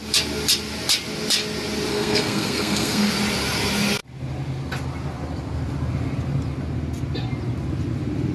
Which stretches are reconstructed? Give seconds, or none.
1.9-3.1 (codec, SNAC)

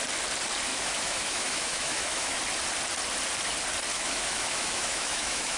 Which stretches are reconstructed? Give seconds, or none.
0.7-2.4 (autoencoder, DAC-VAE); 3.9-5.6

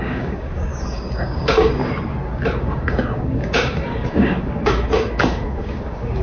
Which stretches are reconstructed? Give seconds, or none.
0.0-1.8 (codec, DAC); 2.6-6.2

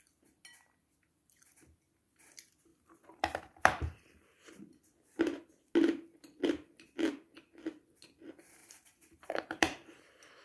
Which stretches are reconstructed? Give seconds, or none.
2.7-4.6 (vocoder, BigVGAN v2); 8.6-10.0

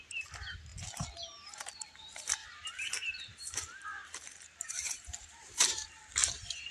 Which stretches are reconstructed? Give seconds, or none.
0.0-0.7 (vocoder, BigVGAN v2); 1.5-2.4; 3.4-6.7